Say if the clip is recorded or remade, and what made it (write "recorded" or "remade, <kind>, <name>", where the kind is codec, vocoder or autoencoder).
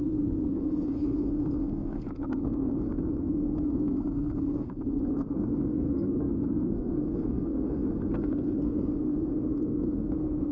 remade, codec, SNAC